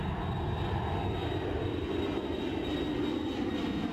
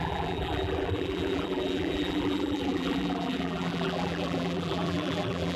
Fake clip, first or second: second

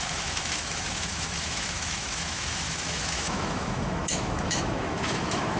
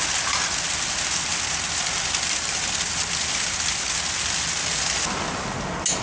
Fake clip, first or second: first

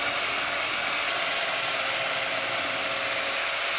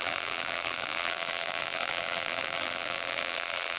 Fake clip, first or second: second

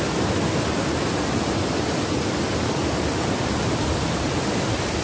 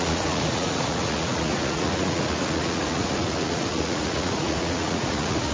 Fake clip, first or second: second